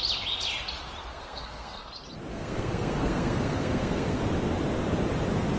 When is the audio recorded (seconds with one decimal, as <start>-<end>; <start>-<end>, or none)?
0.0-1.1; 1.9-2.3; 4.2-5.6